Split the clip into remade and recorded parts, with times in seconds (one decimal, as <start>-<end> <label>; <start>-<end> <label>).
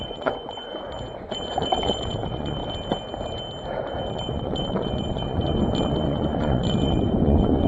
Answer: 0.0-2.6 remade; 2.6-4.1 recorded; 4.1-7.7 remade